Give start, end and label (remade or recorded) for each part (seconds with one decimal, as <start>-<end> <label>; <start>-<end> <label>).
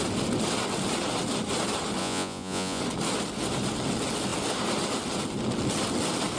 0.0-2.0 recorded; 2.0-2.8 remade; 2.8-6.4 recorded